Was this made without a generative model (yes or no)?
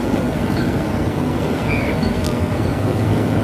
no